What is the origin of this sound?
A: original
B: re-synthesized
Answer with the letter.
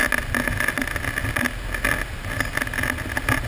A